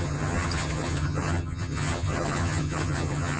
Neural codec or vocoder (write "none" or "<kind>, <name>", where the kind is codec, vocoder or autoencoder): vocoder, HiFi-GAN